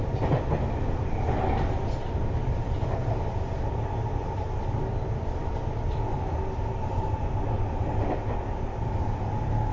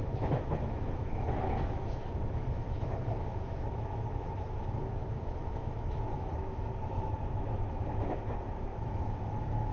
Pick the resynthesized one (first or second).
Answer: second